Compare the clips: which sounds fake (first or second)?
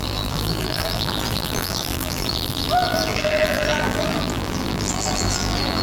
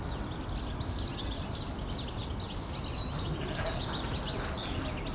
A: first